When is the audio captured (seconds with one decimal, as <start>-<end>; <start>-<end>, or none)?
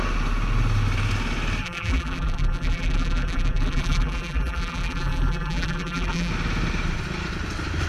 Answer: 0.0-1.6; 6.3-7.9